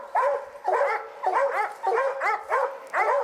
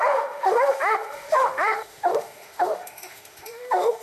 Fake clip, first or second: second